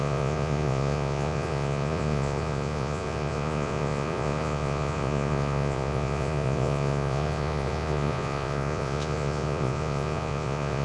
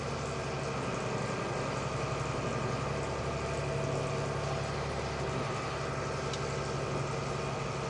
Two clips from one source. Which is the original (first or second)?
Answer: second